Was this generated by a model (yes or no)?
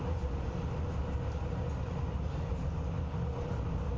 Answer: no